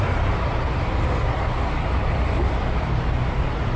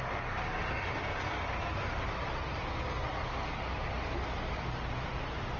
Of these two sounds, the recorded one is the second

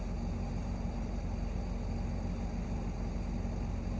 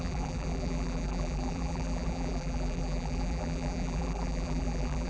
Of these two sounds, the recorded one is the first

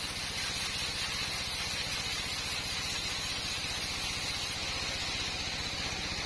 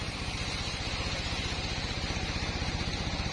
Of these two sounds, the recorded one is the first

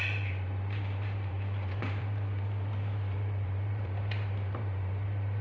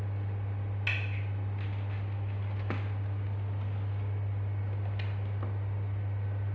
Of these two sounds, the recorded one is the second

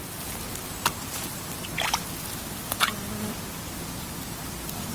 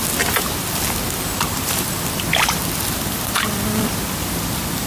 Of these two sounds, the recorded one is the first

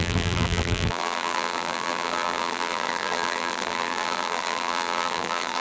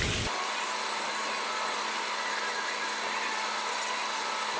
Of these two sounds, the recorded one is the second